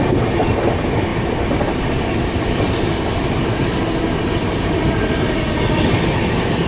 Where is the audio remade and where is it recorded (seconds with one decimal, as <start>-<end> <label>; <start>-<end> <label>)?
0.0-6.7 recorded